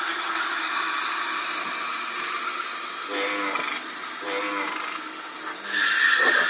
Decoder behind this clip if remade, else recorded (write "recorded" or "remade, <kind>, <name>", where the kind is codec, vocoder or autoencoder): recorded